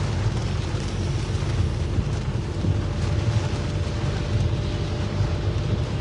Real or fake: real